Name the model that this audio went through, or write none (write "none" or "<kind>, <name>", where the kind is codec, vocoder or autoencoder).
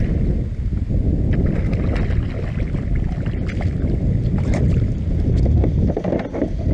none